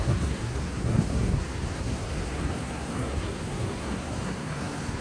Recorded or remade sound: remade